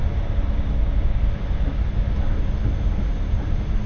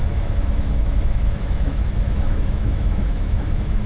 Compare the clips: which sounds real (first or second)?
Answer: first